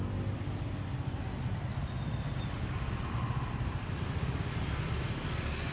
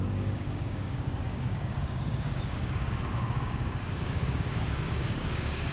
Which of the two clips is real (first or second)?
first